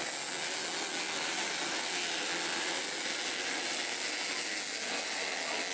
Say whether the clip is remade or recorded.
recorded